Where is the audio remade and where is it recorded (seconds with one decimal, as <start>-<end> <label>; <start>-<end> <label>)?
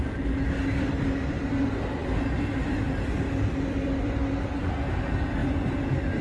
0.0-2.0 recorded; 2.0-4.7 remade; 4.7-6.2 recorded